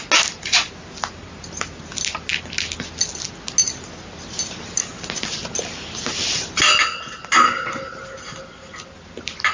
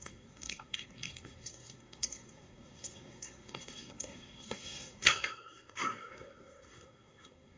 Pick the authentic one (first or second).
first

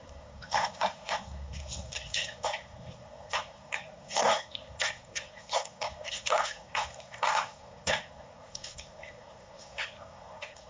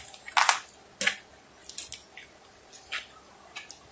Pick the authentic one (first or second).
second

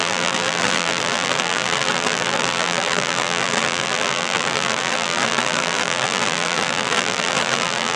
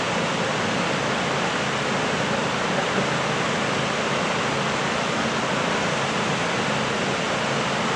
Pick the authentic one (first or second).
second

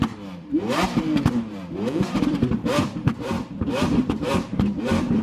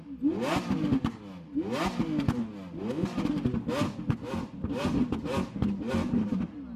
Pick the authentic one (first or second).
second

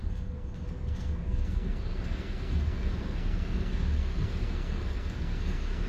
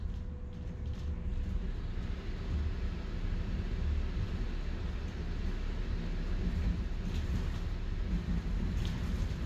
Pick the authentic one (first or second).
second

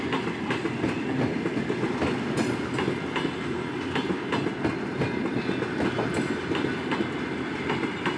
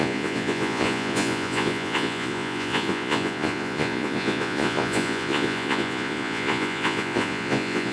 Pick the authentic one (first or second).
first